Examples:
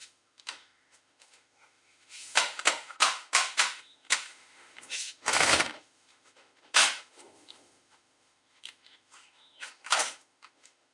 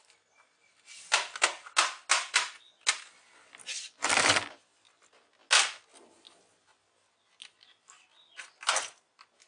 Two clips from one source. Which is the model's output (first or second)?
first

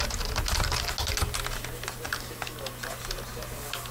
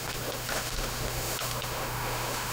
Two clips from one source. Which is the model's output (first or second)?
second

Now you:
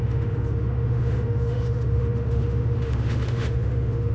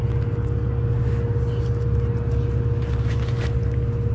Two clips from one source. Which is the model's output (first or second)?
first